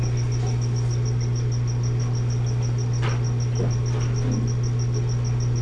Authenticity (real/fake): real